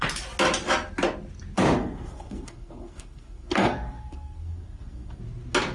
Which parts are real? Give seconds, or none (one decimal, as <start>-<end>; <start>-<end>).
0.0-1.8; 5.2-5.7